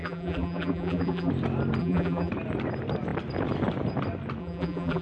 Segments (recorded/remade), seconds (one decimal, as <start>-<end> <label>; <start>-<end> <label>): 0.0-1.3 remade; 1.3-1.8 recorded; 1.8-2.3 remade; 2.3-4.4 recorded; 4.4-5.0 remade